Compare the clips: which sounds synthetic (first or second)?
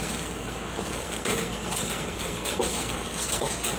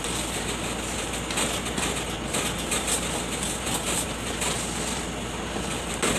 first